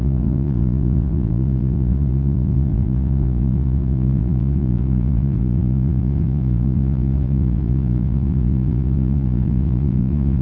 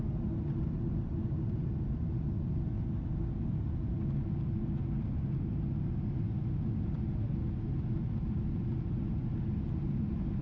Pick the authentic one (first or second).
second